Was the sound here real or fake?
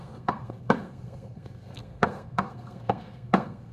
fake